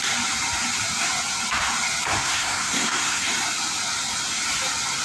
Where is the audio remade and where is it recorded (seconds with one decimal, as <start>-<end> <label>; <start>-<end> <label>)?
0.0-2.2 recorded; 2.2-3.2 remade; 3.2-5.0 recorded